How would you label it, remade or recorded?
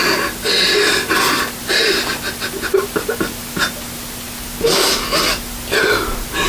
recorded